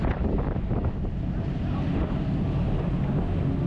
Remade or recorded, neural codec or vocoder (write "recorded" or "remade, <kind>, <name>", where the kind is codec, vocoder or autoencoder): recorded